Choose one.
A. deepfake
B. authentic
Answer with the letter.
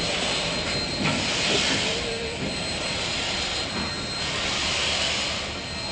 B